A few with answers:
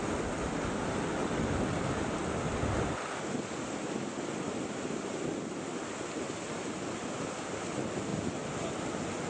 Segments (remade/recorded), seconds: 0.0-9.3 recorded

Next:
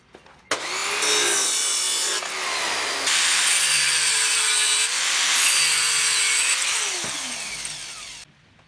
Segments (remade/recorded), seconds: 0.0-8.7 recorded

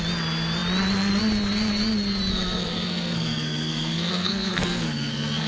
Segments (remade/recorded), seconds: 0.0-2.3 recorded; 2.3-5.5 remade

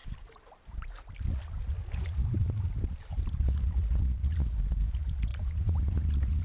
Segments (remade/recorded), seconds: 0.0-1.0 remade; 1.0-2.0 recorded; 2.0-3.8 remade; 3.8-5.3 recorded; 5.3-6.4 remade

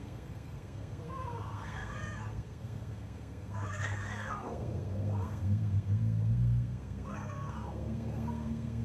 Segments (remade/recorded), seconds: 0.0-8.8 remade